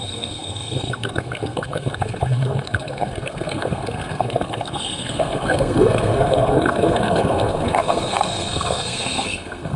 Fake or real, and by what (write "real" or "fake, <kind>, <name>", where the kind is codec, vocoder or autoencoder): fake, codec, SNAC